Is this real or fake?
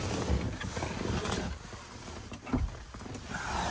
real